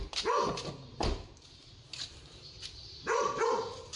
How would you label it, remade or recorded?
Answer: recorded